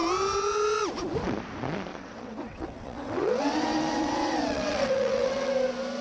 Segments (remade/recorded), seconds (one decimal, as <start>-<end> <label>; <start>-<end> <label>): 0.0-1.9 recorded; 1.9-5.5 remade; 5.5-6.0 recorded